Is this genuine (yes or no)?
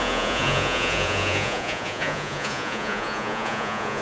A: no